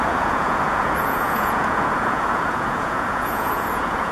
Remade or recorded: remade